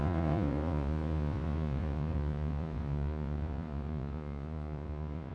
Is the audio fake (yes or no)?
yes